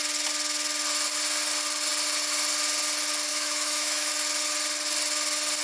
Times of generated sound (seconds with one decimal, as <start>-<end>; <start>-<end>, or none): 3.3-4.1